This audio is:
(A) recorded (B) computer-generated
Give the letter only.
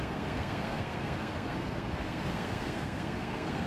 B